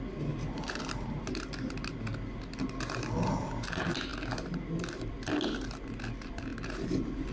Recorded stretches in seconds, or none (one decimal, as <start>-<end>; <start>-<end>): 0.0-7.3